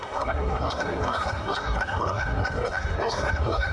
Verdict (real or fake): fake